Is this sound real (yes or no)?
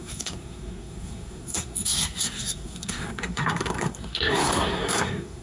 no